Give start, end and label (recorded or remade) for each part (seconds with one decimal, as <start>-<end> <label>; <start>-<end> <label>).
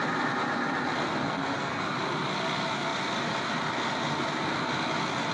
0.0-1.2 recorded; 1.2-1.8 remade; 1.8-5.3 recorded